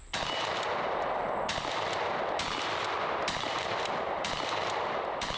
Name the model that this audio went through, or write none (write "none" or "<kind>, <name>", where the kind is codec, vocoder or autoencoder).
vocoder, BigVGAN v2